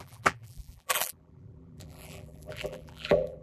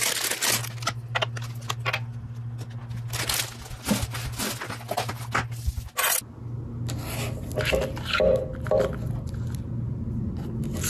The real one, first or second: second